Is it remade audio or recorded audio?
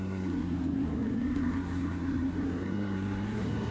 remade